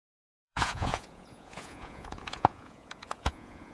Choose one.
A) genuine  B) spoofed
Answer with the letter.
B